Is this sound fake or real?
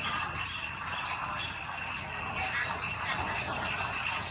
fake